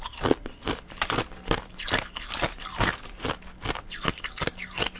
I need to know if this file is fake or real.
real